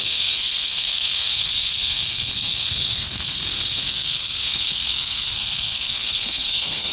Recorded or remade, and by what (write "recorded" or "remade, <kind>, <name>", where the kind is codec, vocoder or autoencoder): remade, codec, SNAC